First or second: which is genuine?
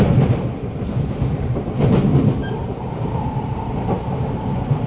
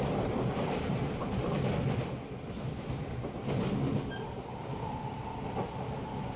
second